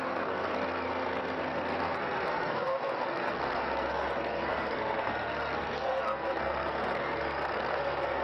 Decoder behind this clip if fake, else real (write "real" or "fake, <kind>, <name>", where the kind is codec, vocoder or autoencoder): fake, codec, SNAC